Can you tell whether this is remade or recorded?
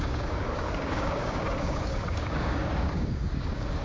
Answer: remade